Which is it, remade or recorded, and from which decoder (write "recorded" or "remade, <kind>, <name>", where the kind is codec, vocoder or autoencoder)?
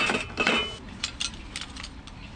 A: recorded